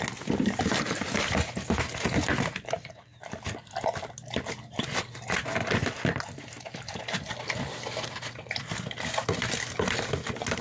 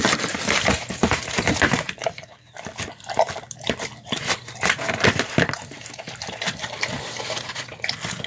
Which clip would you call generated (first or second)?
second